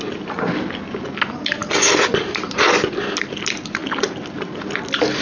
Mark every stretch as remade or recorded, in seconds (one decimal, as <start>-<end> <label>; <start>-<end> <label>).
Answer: 0.0-5.2 recorded